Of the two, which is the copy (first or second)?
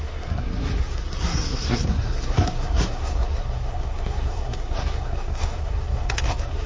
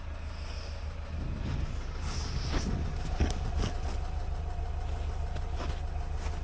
first